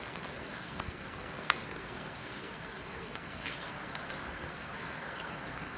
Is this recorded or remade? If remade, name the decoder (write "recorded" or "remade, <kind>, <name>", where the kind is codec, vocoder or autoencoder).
remade, codec, SNAC